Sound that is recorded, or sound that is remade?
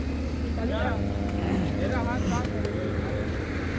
recorded